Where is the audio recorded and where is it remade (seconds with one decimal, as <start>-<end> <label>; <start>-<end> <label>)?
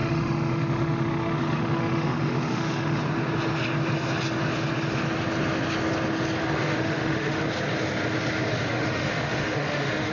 0.0-3.0 remade; 3.0-6.4 recorded; 6.4-7.4 remade; 7.4-8.5 recorded; 8.5-10.1 remade